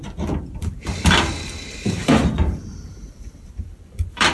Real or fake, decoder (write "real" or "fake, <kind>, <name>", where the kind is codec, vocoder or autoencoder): fake, vocoder, BigVGAN v2